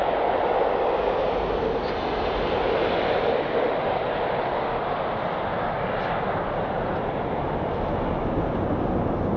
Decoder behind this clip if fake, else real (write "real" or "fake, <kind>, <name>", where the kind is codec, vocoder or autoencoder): real